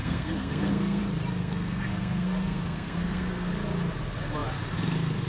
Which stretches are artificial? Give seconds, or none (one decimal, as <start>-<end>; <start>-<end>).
0.0-1.0; 1.4-3.5